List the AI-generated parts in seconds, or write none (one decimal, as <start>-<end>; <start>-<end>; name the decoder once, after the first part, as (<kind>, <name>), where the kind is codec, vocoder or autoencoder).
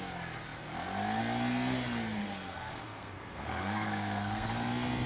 2.2-4.5 (codec, SNAC)